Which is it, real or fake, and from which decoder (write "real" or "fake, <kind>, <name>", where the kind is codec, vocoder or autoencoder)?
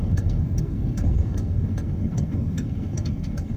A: fake, codec, SNAC